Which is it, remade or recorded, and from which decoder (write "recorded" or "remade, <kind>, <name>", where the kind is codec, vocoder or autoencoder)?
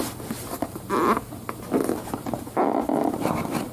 recorded